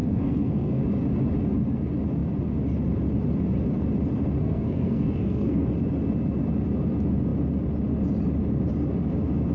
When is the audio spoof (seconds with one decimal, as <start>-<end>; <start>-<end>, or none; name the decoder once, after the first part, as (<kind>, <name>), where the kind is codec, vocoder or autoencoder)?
0.0-0.8 (codec, SNAC); 4.4-5.7